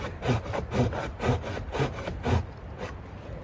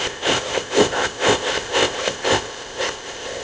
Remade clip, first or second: second